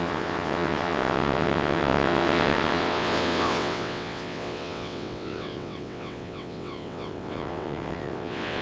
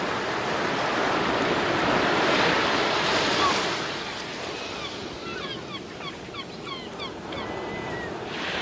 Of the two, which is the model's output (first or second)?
first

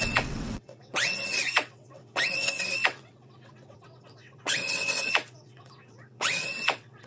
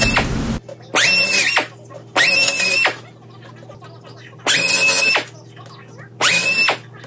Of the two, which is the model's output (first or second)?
first